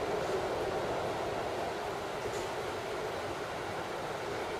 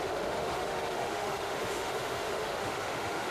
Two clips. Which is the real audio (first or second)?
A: first